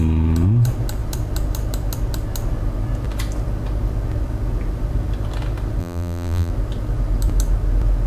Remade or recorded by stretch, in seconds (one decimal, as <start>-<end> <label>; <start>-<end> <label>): 0.0-5.8 recorded; 5.8-6.5 remade; 6.5-8.1 recorded